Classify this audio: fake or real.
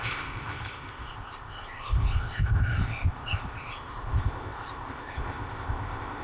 fake